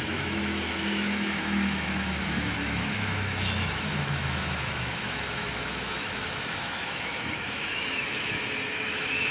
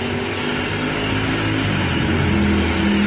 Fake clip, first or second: first